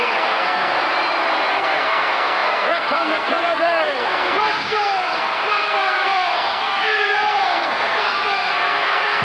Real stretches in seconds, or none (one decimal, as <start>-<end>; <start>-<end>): 0.8-1.5